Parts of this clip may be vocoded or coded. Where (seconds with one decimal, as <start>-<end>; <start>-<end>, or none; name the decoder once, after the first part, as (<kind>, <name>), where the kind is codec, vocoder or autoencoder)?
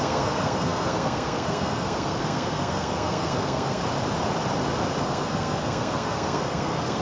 0.0-3.8 (codec, SNAC); 5.0-7.0